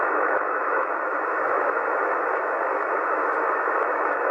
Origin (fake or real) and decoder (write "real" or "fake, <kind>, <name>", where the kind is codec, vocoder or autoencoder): fake, autoencoder, DAC-VAE